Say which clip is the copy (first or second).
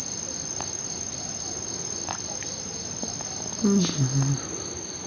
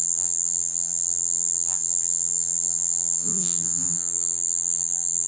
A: second